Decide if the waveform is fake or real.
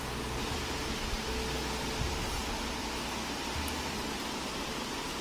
real